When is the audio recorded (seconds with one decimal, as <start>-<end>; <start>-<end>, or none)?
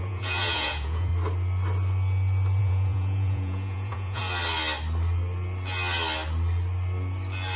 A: 1.1-2.6; 4.2-7.6